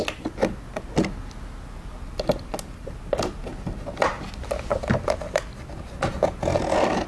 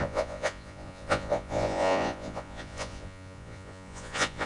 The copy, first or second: second